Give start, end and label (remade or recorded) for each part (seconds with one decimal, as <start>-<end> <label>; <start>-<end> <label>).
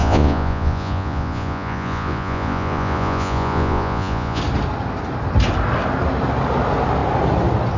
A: 0.0-4.4 remade; 4.4-7.8 recorded